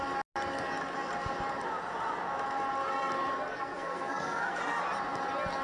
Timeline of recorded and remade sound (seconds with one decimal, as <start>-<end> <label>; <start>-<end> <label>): 0.0-3.5 recorded; 3.5-4.6 remade; 4.6-5.6 recorded